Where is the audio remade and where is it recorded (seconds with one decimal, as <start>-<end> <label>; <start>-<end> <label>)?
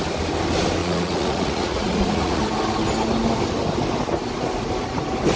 0.0-0.8 recorded; 0.8-2.4 remade; 2.4-5.4 recorded